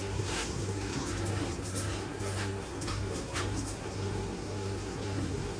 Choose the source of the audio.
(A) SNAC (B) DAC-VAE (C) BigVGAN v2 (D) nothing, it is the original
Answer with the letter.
A